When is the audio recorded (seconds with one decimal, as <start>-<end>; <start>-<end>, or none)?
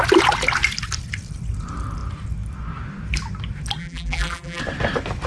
0.0-3.8; 4.6-5.3